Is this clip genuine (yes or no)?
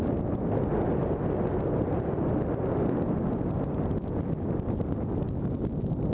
yes